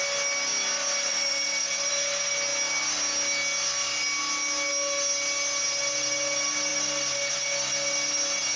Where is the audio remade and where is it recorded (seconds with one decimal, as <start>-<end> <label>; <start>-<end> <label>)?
0.0-8.6 recorded

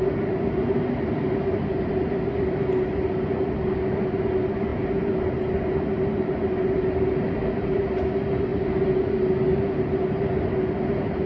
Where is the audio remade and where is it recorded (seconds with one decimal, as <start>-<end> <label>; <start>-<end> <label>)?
0.0-11.3 recorded

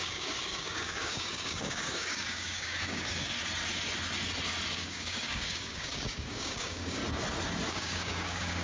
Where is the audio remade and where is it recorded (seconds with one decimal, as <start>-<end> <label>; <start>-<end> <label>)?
0.0-3.3 remade; 3.3-4.7 recorded; 4.7-7.0 remade; 7.0-7.7 recorded; 7.7-8.6 remade

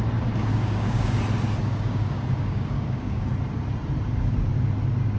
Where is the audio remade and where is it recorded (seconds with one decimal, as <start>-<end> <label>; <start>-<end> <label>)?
0.0-0.5 recorded; 0.5-1.2 remade; 1.2-1.6 recorded; 1.6-3.3 remade; 3.3-5.2 recorded

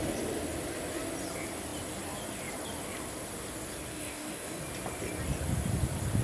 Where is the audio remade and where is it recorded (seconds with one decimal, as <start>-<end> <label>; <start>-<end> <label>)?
0.0-3.9 recorded; 3.9-4.6 remade; 4.6-6.2 recorded

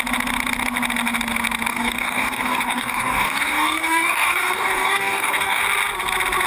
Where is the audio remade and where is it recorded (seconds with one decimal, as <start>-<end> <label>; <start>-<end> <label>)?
0.0-1.7 recorded; 1.7-5.6 remade; 5.6-6.5 recorded

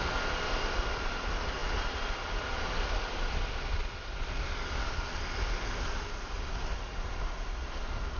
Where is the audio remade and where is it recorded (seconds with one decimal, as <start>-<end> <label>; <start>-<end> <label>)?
0.0-8.2 recorded

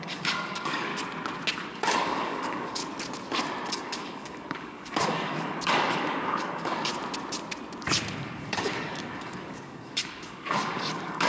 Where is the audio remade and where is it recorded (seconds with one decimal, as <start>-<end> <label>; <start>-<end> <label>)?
0.0-0.9 remade; 0.9-1.7 recorded; 1.7-2.8 remade; 2.8-3.7 recorded; 3.7-6.9 remade; 6.9-8.2 recorded; 8.2-11.3 remade